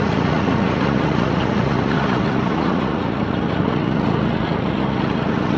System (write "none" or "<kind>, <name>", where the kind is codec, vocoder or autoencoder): vocoder, Vocos